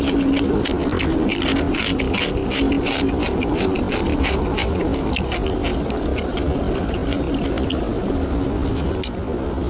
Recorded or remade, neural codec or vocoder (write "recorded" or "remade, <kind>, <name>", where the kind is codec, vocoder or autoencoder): recorded